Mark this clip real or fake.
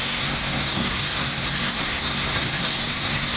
fake